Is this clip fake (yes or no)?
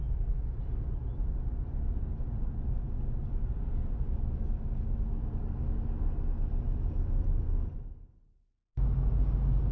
no